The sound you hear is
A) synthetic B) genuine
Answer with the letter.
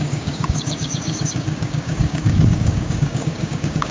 A